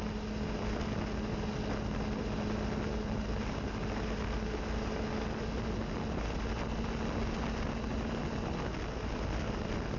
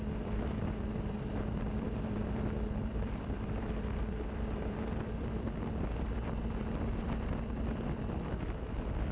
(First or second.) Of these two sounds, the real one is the first